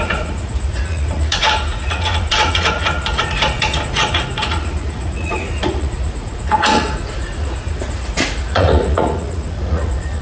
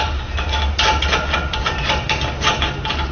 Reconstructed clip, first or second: first